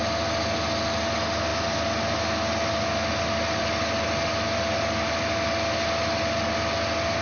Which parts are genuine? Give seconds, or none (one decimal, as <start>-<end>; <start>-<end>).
0.0-7.2